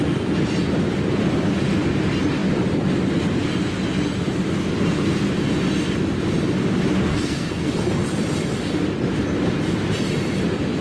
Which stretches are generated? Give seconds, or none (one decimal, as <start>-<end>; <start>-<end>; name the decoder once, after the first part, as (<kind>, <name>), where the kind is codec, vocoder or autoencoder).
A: 7.1-7.7 (codec, SNAC)